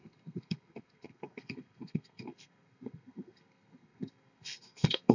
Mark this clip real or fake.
fake